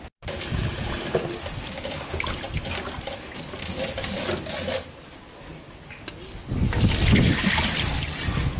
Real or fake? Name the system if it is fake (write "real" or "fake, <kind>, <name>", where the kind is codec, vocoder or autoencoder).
real